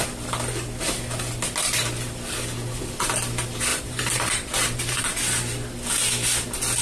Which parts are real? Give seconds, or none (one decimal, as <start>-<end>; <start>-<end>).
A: 0.0-3.7; 5.0-6.8